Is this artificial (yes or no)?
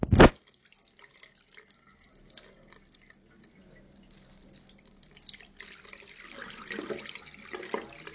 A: no